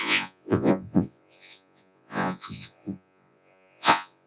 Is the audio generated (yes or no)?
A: yes